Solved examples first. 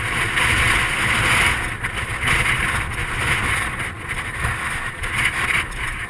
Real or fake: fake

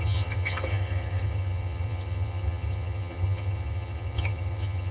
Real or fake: fake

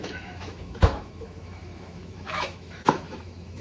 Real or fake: fake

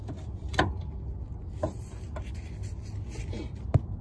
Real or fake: real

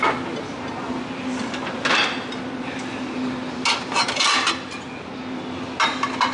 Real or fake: real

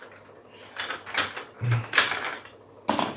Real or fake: real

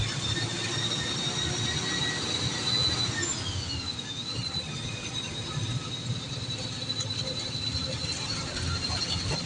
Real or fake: real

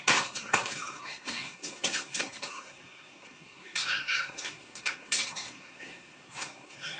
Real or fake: fake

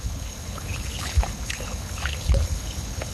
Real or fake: fake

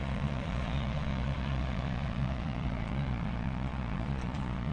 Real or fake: fake